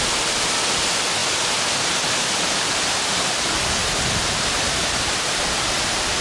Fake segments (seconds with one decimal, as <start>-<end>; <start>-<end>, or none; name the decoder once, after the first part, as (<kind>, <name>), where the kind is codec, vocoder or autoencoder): 3.8-5.0 (vocoder, BigVGAN v2)